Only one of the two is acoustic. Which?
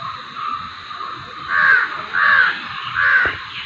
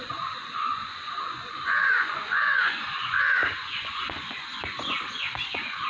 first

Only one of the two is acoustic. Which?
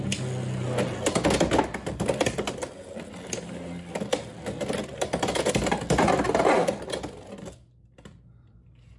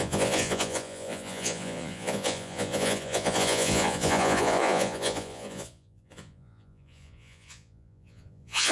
first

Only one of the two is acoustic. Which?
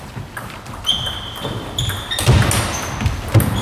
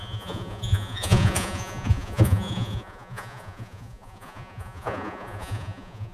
first